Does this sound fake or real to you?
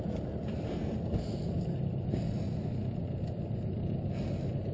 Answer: real